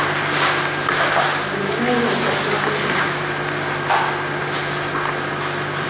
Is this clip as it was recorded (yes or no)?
yes